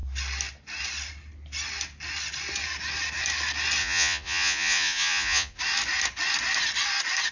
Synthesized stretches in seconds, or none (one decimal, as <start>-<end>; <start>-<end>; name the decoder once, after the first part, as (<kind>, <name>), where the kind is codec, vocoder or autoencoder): 3.8-5.6 (vocoder, Vocos)